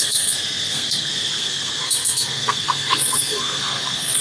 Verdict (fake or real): fake